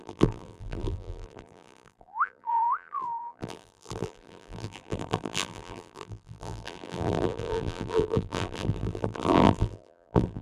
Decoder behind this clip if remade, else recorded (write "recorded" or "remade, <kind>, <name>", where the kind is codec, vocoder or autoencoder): remade, vocoder, BigVGAN v2